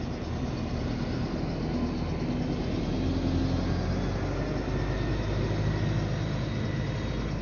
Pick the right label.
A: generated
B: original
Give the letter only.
B